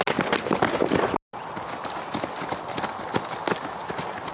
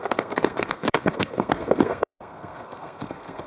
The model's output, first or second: second